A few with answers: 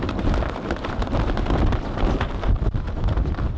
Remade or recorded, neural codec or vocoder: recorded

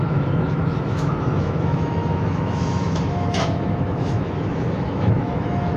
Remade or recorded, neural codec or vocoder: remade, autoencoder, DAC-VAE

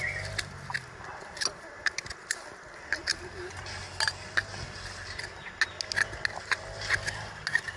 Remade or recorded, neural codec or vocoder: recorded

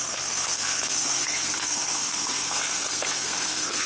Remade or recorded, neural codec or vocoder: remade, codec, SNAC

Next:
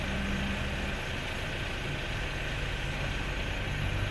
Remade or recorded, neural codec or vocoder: recorded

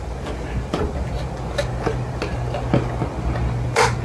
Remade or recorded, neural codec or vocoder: recorded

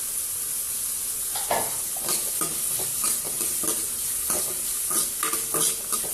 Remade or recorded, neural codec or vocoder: recorded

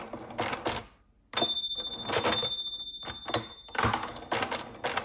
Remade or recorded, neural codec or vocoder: recorded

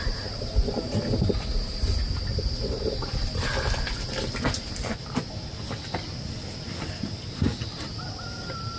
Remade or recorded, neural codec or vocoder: recorded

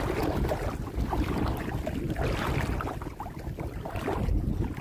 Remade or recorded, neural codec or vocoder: recorded